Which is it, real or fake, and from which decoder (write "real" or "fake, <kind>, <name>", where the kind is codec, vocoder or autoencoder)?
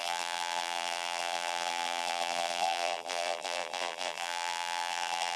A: fake, vocoder, BigVGAN v2